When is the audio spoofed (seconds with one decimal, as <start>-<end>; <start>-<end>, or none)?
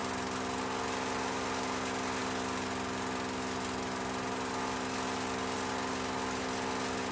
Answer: none